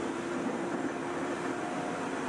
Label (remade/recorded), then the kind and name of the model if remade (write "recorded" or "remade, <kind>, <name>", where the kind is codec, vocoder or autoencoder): remade, vocoder, BigVGAN v2